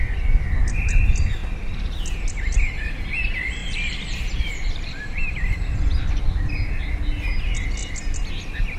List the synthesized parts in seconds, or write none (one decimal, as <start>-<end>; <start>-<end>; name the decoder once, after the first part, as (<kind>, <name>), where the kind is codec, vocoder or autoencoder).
3.6-6.5 (vocoder, BigVGAN v2); 7.8-8.3